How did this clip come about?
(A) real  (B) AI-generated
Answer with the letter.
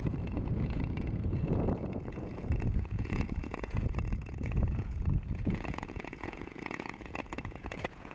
B